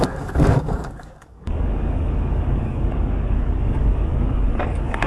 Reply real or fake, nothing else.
fake